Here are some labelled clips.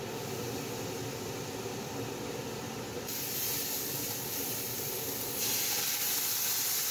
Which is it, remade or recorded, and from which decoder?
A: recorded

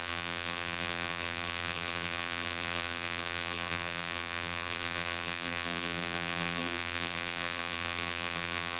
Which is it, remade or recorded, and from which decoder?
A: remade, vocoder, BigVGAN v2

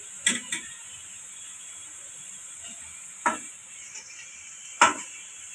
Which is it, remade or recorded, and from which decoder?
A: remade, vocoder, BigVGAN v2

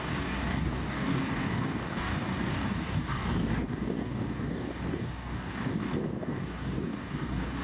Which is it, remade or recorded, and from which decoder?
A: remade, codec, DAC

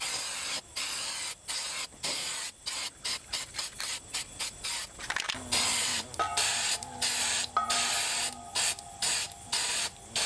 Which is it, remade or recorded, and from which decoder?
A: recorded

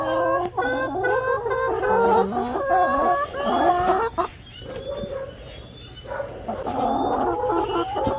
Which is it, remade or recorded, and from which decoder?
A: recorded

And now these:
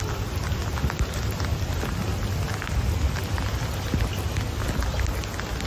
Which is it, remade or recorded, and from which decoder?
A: recorded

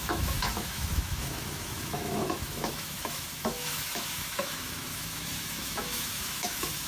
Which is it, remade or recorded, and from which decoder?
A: remade, autoencoder, DAC-VAE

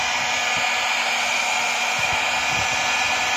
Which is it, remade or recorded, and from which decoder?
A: recorded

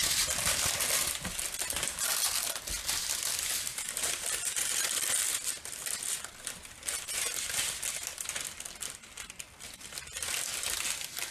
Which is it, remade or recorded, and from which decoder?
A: recorded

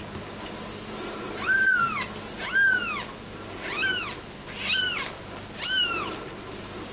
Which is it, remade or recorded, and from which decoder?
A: recorded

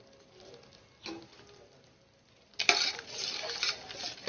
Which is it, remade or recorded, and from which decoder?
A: recorded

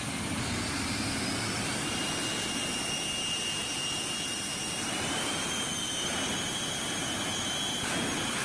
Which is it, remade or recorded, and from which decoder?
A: recorded